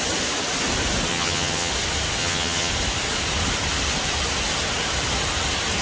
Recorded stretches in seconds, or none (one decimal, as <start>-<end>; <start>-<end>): 0.0-1.1; 1.7-2.2; 2.7-5.8